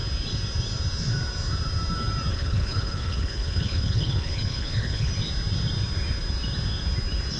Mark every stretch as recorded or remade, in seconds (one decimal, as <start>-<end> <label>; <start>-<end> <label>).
0.0-2.3 recorded; 2.3-5.1 remade; 5.1-7.4 recorded